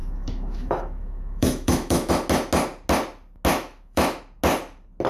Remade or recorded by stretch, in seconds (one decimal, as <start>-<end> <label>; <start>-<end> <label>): 0.0-2.1 remade; 2.1-3.5 recorded; 3.5-4.2 remade; 4.2-5.1 recorded

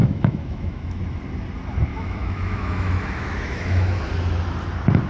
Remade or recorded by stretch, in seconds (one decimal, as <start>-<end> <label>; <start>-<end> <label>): 0.0-1.0 remade; 1.0-1.9 recorded; 1.9-4.0 remade; 4.0-5.1 recorded